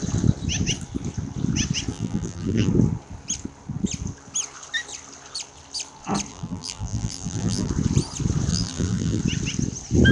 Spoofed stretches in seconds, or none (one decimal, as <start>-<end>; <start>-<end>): 1.9-2.7; 6.3-7.7; 8.5-9.2